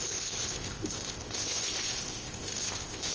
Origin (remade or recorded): remade